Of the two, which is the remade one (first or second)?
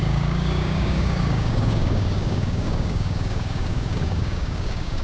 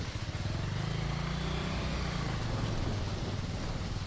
first